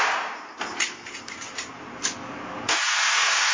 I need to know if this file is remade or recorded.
recorded